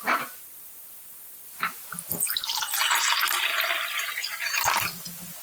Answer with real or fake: real